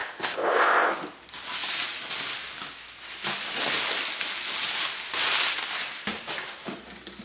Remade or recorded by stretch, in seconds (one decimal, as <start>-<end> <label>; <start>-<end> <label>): 0.0-0.9 remade; 0.9-7.2 recorded